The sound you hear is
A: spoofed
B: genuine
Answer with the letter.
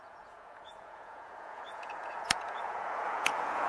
A